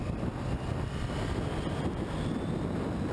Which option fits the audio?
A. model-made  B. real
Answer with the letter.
B